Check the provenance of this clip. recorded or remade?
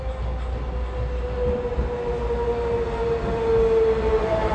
recorded